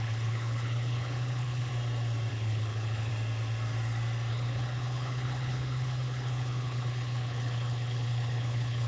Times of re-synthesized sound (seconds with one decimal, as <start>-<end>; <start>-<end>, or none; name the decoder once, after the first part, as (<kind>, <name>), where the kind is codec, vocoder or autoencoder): 0.0-1.7 (codec, HILCodec); 2.3-3.1; 4.3-8.9

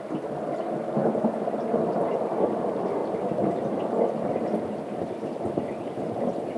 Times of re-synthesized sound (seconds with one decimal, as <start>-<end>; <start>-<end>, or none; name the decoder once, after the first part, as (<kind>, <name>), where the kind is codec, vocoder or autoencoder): none

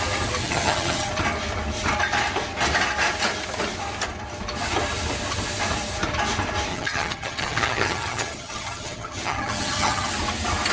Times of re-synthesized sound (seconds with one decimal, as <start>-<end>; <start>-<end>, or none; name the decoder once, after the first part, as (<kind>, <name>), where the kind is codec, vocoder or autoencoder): 0.4-1.1 (vocoder, HiFi-GAN); 6.7-10.1

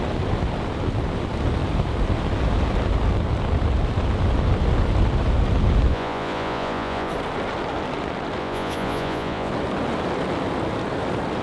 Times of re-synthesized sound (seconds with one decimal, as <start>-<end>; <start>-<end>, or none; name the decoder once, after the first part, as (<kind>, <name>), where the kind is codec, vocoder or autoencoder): 5.9-7.1 (vocoder, Vocos); 8.4-9.5

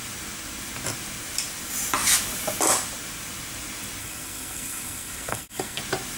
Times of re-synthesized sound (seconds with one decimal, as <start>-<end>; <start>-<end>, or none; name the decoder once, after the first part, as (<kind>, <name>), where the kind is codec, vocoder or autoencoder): 4.0-5.8 (codec, SNAC)

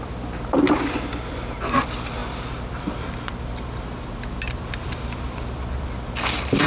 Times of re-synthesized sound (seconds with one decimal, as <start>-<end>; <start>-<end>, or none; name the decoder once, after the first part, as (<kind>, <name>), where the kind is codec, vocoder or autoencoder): none

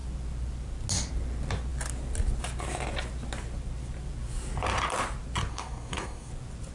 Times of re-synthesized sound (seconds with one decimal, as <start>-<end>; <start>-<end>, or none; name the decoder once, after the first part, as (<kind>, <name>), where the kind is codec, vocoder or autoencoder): 5.5-6.3 (codec, DAC)